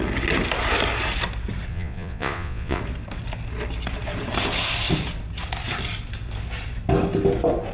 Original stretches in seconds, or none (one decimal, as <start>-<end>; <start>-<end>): 0.0-1.7; 2.8-7.7